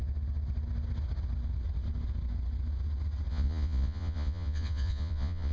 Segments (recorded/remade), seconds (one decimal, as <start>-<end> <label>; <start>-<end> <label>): 0.0-3.3 recorded; 3.3-5.5 remade